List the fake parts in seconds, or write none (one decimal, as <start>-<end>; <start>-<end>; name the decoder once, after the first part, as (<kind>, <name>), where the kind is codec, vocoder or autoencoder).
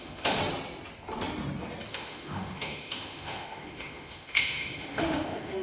0.0-0.4 (autoencoder, DAC-VAE); 1.9-5.6